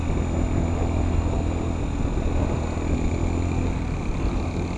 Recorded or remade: recorded